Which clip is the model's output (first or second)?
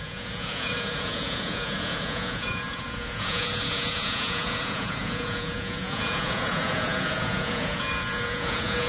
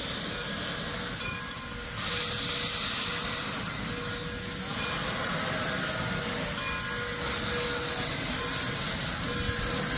first